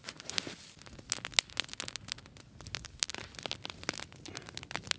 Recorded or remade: recorded